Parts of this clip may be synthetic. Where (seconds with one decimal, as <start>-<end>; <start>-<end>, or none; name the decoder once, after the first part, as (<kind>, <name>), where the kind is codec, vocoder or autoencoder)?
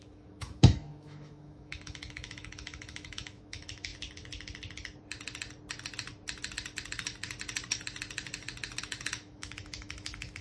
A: 0.0-3.9 (autoencoder, DAC-VAE); 8.8-10.4